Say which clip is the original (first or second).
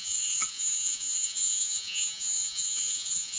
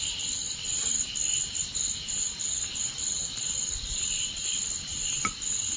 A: second